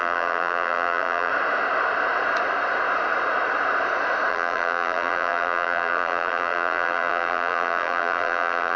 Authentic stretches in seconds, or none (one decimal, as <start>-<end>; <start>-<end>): 1.3-4.3